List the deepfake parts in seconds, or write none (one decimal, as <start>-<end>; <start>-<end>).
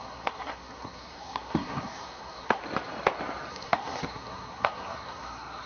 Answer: 0.0-2.6; 3.5-5.7